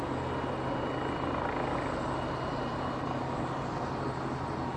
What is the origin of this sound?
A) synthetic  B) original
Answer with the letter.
B